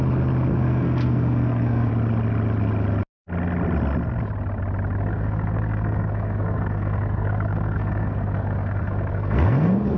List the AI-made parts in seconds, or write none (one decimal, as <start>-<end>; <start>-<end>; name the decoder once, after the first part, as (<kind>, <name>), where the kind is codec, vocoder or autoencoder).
0.5-1.9 (codec, SNAC); 5.1-10.0